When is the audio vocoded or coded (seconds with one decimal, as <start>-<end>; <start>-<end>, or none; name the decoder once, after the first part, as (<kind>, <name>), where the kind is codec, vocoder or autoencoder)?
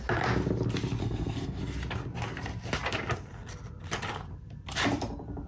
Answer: 1.0-1.6 (codec, SNAC)